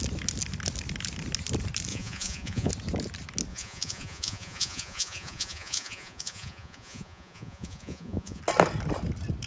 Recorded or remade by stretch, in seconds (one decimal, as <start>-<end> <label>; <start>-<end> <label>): 0.0-1.9 recorded; 1.9-2.7 remade; 2.7-3.5 recorded; 3.5-8.4 remade; 8.4-9.5 recorded